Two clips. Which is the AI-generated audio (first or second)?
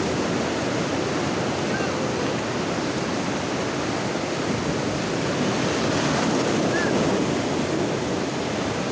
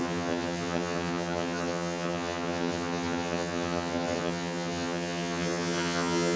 second